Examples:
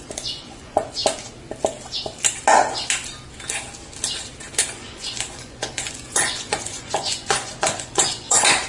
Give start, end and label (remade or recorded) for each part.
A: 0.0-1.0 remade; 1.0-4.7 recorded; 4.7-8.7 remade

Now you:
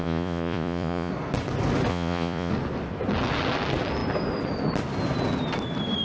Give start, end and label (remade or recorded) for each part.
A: 0.0-1.1 remade; 1.1-1.9 recorded; 1.9-2.5 remade; 2.5-6.0 recorded

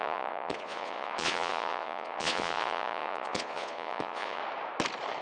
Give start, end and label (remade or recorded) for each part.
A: 0.0-4.4 remade; 4.4-5.2 recorded

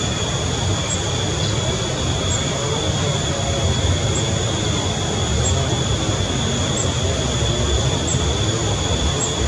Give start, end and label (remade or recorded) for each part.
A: 0.0-9.5 recorded